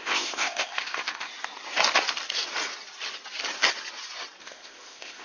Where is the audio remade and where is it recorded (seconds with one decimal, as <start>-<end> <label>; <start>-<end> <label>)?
0.0-1.3 remade; 1.3-4.4 recorded; 4.4-5.2 remade